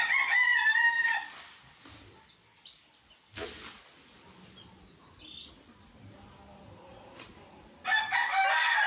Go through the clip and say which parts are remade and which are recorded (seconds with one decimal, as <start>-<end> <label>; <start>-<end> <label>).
0.0-0.5 recorded; 0.5-1.5 remade; 1.5-6.9 recorded; 6.9-8.0 remade; 8.0-8.9 recorded